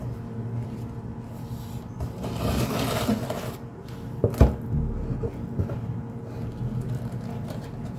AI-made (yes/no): no